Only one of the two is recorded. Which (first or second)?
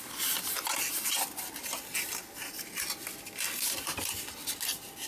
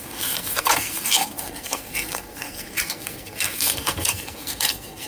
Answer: first